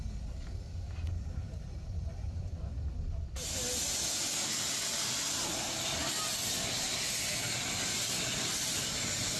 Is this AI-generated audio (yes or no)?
no